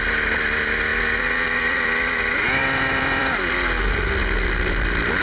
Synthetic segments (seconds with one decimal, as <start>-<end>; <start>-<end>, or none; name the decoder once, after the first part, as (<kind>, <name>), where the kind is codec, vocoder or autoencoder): 0.9-2.2 (vocoder, BigVGAN v2); 2.6-5.2